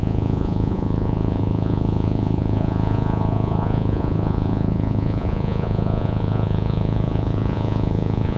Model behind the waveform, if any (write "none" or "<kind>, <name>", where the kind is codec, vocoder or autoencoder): vocoder, Vocos